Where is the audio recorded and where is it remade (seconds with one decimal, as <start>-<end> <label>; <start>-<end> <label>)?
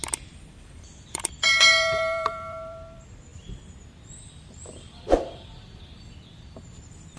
0.0-0.5 recorded; 0.5-7.2 remade